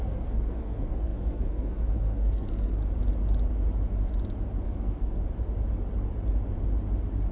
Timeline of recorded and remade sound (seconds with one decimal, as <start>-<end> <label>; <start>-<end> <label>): 0.0-2.8 remade; 2.8-4.6 recorded; 4.6-5.2 remade; 5.2-7.3 recorded